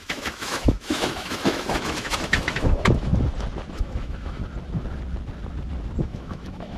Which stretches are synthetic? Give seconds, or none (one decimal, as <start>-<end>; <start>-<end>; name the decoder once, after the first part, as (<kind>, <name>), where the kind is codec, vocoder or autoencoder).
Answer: 0.0-3.1 (autoencoder, DAC-VAE); 3.7-4.4; 6.0-6.8